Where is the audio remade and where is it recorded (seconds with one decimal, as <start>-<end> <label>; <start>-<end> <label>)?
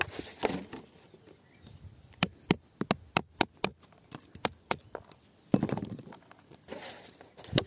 0.0-3.7 recorded; 3.7-7.0 remade; 7.0-7.7 recorded